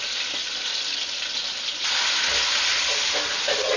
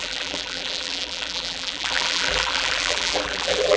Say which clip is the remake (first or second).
second